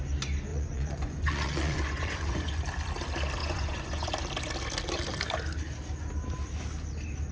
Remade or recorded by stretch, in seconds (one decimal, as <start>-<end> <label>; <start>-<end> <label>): 0.0-0.5 recorded; 0.5-2.6 remade; 2.6-3.4 recorded; 3.4-4.1 remade; 4.1-7.3 recorded

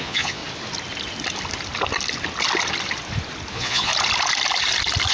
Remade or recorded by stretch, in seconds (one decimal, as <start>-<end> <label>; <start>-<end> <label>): 0.0-0.4 remade; 0.4-3.5 recorded; 3.5-3.9 remade; 3.9-5.1 recorded

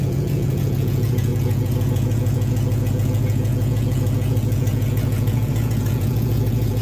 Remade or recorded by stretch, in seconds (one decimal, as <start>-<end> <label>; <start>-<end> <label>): 0.0-6.8 remade

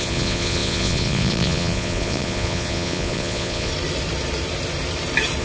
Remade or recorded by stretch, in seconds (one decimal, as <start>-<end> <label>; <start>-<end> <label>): 0.0-3.7 remade; 3.7-5.4 recorded